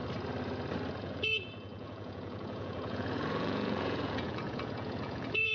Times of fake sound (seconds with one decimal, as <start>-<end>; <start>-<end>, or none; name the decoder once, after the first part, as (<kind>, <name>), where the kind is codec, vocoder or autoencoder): 1.0-5.5 (vocoder, Vocos)